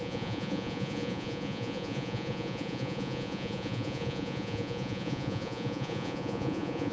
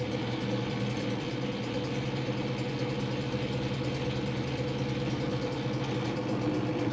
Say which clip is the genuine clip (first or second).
second